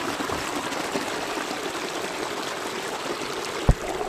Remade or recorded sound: recorded